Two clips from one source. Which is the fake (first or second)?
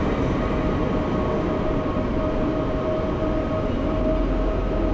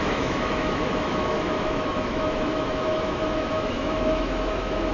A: second